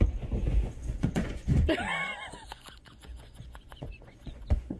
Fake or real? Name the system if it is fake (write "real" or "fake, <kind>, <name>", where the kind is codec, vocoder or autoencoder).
fake, vocoder, Vocos